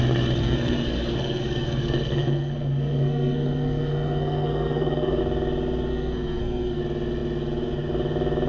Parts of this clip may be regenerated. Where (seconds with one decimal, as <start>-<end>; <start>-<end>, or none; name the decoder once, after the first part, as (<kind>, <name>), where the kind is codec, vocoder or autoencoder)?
0.4-5.2 (codec, SNAC); 5.9-6.8